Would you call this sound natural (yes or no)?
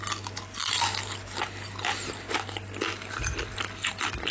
yes